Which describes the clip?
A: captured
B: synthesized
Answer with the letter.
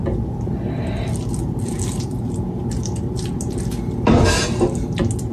A